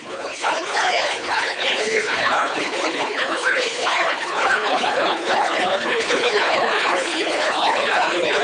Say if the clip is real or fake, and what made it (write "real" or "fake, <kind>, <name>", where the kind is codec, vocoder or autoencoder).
fake, codec, HILCodec